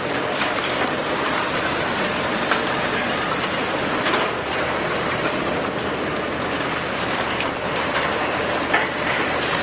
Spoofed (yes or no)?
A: yes